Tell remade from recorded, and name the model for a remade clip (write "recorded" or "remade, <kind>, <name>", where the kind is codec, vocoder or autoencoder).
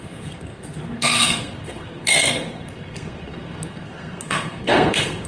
remade, codec, SNAC